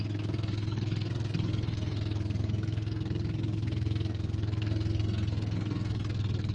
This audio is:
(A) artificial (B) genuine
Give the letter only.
A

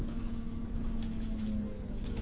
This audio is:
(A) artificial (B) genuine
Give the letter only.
A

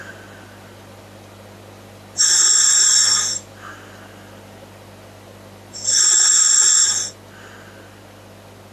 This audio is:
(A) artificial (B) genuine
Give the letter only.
B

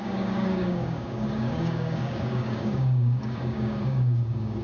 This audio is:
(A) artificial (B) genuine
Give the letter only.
A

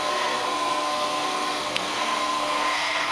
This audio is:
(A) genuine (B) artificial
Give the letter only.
B